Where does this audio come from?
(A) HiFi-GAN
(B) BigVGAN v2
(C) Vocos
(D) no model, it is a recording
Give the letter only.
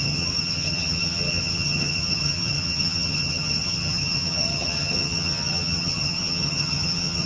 A